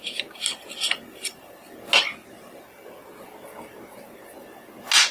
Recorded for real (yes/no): yes